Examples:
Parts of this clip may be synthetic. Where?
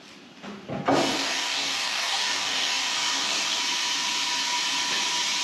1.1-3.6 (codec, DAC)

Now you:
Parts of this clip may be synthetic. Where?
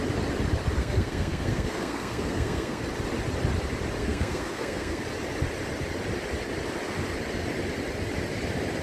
0.8-2.8 (codec, SNAC); 4.0-5.0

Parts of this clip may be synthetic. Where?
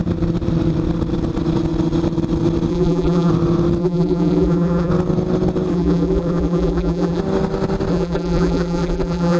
2.7-3.3 (vocoder, BigVGAN v2); 3.8-4.9; 5.7-7.2; 7.9-9.4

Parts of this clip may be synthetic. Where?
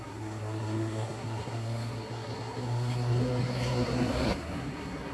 0.0-5.1 (codec, SNAC)